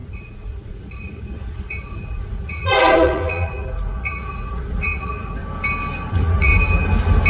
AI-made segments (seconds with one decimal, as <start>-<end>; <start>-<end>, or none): 0.0-5.4; 6.1-6.5